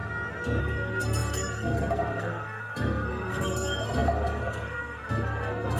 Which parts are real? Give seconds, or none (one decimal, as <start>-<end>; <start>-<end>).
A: 0.0-0.6